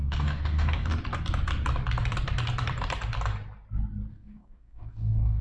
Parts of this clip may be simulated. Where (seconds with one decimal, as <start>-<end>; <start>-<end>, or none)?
0.0-0.9; 4.1-5.4